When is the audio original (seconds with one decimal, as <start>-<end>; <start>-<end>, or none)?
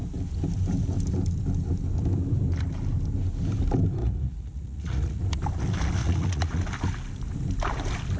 0.0-4.0; 5.2-6.0; 6.6-8.2